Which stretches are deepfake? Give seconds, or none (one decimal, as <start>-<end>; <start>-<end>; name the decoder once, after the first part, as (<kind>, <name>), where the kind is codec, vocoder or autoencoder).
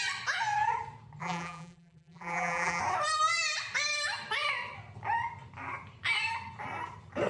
1.2-2.8 (vocoder, BigVGAN v2)